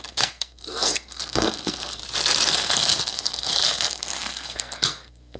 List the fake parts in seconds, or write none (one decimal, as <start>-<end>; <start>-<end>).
0.0-2.0; 2.5-5.4